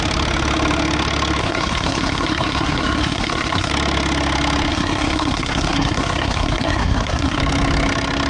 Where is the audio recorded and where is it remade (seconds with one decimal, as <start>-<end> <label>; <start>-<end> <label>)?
0.0-1.4 recorded; 1.4-3.7 remade; 3.7-4.7 recorded; 4.7-7.4 remade; 7.4-8.3 recorded